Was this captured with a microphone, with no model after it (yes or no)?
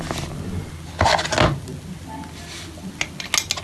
yes